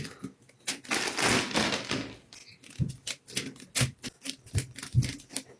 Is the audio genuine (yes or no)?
yes